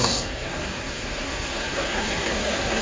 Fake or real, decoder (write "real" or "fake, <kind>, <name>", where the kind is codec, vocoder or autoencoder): fake, codec, SNAC